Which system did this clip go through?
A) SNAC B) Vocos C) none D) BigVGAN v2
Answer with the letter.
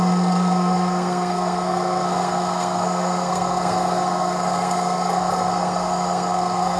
A